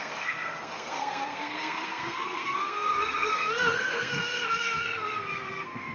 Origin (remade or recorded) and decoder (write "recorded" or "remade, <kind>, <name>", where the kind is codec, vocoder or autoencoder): remade, codec, SNAC